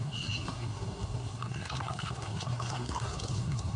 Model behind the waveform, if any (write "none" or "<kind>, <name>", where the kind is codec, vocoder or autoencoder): codec, SNAC